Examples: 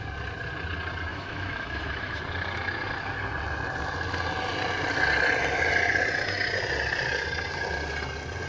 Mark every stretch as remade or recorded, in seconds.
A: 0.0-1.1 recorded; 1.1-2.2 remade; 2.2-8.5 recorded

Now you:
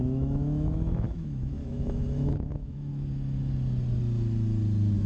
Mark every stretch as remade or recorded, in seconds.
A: 0.0-2.9 remade; 2.9-5.1 recorded

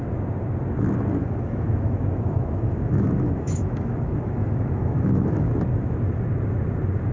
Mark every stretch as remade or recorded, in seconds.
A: 0.0-1.2 recorded; 1.2-5.5 remade; 5.5-7.1 recorded

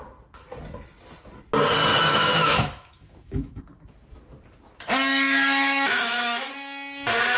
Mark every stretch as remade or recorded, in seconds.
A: 0.0-1.9 recorded; 1.9-3.6 remade; 3.6-5.1 recorded; 5.1-6.5 remade; 6.5-7.4 recorded